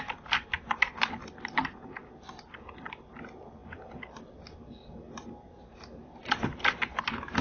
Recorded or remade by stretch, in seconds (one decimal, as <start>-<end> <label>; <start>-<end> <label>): 0.0-7.4 recorded